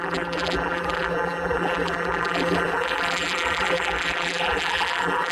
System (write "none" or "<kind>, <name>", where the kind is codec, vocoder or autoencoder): vocoder, BigVGAN v2